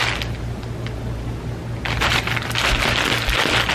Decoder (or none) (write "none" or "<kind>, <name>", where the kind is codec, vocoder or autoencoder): none